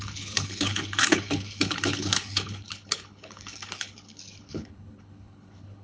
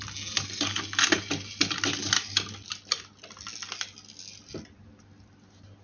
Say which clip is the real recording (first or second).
second